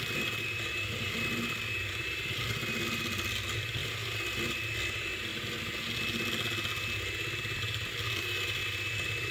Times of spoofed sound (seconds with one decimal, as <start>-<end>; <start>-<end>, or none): none